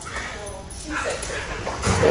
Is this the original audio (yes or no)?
no